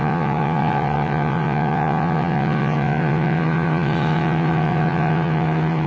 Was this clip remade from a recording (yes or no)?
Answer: yes